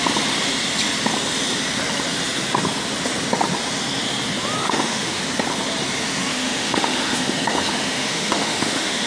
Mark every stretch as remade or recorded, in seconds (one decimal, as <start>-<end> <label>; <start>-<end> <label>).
0.0-4.6 recorded; 4.6-5.2 remade; 5.2-6.3 recorded; 6.3-9.1 remade